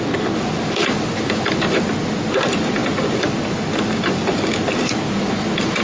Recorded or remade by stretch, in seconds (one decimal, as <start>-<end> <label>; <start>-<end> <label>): 0.0-5.8 recorded